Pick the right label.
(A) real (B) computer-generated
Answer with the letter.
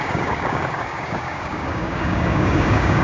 B